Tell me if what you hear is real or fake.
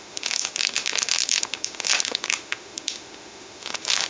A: fake